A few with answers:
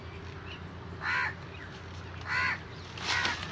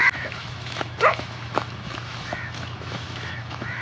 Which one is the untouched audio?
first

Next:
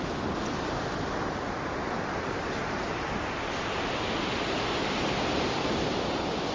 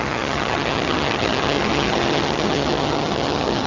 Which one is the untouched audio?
first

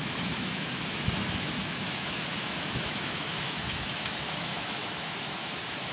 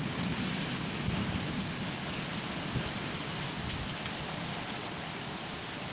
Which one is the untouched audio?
second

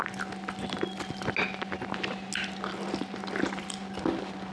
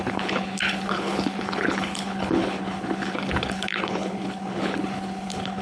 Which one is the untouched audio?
first